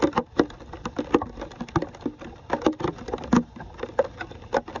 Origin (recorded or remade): recorded